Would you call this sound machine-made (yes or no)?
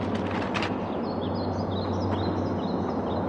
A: no